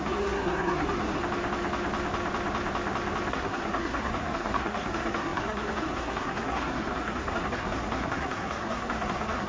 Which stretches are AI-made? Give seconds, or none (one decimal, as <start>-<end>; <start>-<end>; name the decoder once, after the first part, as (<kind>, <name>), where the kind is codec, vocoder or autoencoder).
0.0-1.2 (codec, SNAC); 3.3-9.5